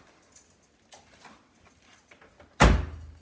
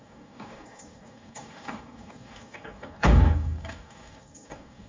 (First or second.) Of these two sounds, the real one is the first